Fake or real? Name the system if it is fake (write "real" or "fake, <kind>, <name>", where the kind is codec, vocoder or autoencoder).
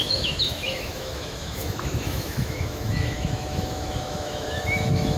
fake, autoencoder, DAC-VAE